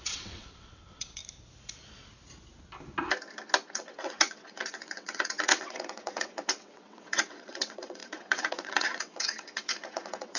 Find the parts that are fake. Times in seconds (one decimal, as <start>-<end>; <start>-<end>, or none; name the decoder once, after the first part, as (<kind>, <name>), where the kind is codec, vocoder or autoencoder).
0.0-1.2 (vocoder, WaveNeXt); 3.7-10.4

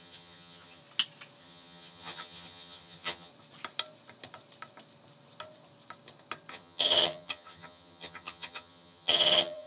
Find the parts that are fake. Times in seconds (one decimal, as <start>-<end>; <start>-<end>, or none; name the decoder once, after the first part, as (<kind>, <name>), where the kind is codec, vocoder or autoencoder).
0.0-0.8 (vocoder, HiFi-GAN); 1.4-3.3; 6.5-9.7